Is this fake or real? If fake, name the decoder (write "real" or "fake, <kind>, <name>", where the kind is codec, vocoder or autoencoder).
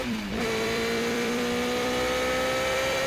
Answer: fake, vocoder, BigVGAN v2